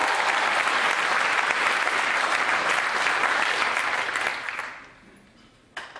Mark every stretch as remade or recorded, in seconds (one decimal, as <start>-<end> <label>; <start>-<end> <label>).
0.0-6.0 recorded